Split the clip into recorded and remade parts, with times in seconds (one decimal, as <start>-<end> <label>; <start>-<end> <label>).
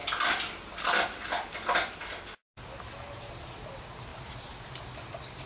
0.0-4.1 recorded; 4.1-4.8 remade; 4.8-5.5 recorded